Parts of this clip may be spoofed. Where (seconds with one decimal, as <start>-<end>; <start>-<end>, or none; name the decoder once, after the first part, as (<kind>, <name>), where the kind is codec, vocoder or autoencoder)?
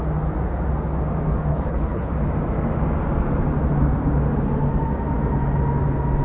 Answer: 1.5-2.1 (codec, HILCodec)